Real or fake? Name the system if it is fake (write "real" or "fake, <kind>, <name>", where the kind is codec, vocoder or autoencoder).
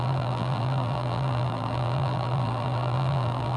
fake, vocoder, BigVGAN v2